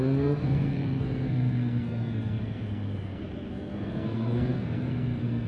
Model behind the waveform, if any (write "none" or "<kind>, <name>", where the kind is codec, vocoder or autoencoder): codec, SNAC